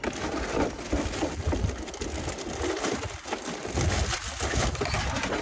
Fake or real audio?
real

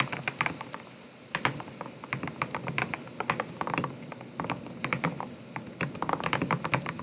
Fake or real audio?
real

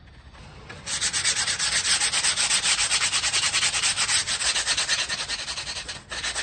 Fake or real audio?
real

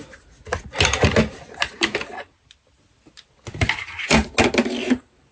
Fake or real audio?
real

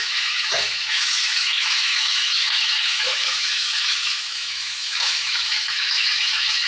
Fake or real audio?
fake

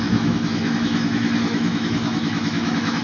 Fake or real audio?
fake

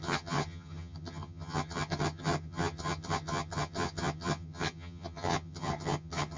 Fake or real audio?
fake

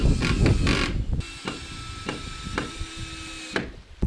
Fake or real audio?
real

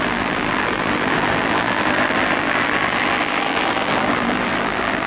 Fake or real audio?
fake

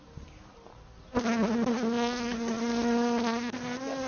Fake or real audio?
real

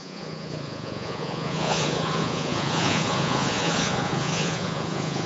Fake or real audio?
fake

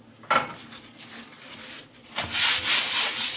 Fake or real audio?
real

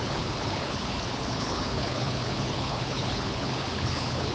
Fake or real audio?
fake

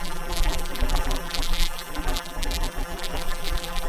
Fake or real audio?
fake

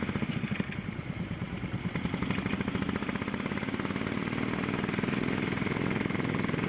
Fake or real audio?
real